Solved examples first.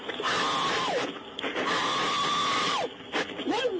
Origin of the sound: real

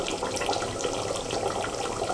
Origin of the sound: real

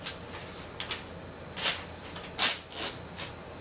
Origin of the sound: real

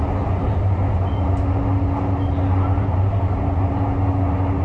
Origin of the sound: real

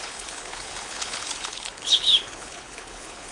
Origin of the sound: fake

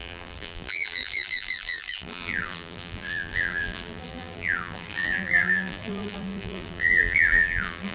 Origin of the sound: fake